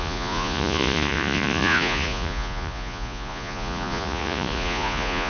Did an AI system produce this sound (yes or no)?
yes